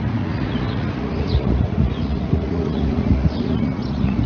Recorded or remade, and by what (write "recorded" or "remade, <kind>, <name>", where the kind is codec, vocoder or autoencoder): remade, vocoder, Vocos